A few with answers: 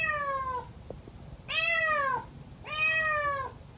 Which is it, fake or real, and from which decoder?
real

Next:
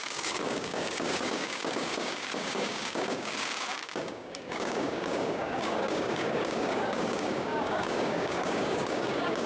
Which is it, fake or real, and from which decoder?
fake, codec, DAC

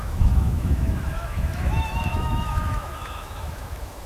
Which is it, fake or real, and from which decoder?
fake, autoencoder, DAC-VAE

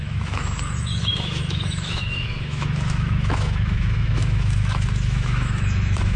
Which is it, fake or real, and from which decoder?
fake, autoencoder, DAC-VAE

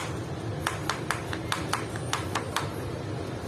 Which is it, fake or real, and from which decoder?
real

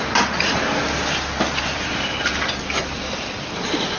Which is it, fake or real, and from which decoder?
real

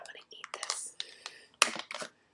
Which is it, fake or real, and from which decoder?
real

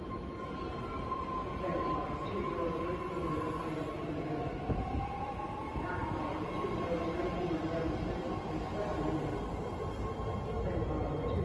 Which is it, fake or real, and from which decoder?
real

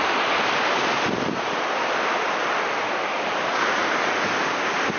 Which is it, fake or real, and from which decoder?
real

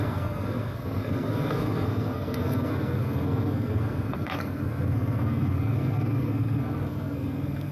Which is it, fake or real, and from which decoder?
fake, codec, SNAC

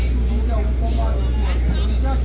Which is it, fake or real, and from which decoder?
real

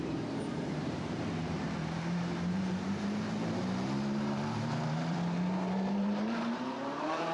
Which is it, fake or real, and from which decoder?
fake, vocoder, BigVGAN v2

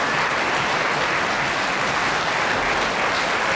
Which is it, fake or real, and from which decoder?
real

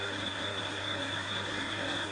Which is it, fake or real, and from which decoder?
fake, codec, SNAC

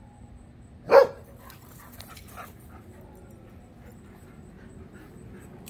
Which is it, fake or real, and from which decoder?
real